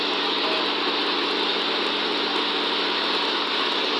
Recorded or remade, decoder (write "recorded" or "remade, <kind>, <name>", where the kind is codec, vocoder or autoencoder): recorded